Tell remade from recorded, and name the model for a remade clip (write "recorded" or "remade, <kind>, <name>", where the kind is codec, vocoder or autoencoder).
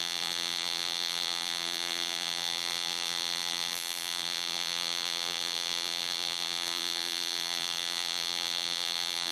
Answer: remade, vocoder, BigVGAN v2